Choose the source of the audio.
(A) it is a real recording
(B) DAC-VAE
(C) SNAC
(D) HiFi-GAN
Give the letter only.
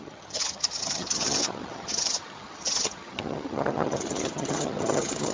D